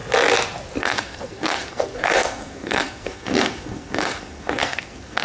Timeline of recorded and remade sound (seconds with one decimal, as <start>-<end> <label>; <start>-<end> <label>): 0.0-0.8 recorded; 0.8-5.2 remade